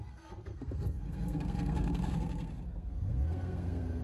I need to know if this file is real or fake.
fake